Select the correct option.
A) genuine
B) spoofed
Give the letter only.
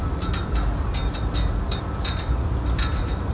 A